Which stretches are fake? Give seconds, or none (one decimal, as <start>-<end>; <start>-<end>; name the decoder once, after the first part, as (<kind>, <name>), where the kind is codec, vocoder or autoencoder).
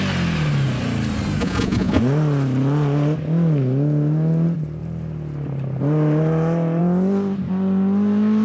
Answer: 1.4-2.0 (vocoder, Vocos)